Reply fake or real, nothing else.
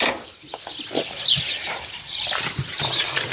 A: real